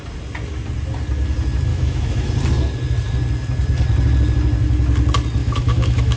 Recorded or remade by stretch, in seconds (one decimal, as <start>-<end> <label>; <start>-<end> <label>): 0.0-1.7 recorded; 1.7-2.3 remade; 2.3-5.4 recorded; 5.4-6.2 remade